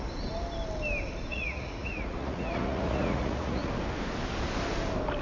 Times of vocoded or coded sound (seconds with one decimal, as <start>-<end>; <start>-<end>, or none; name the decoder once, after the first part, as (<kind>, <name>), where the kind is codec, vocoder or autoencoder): 1.3-3.7 (vocoder, Vocos)